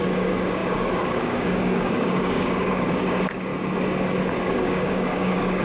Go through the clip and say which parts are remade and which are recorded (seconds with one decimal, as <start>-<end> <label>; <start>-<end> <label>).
0.0-3.5 remade; 3.5-4.5 recorded; 4.5-5.6 remade